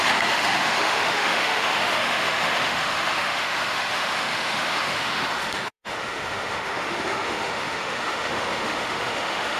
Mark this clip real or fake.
fake